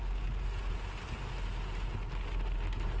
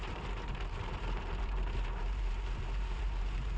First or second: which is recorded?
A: first